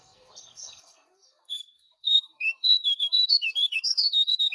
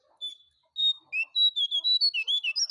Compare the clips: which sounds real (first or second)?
second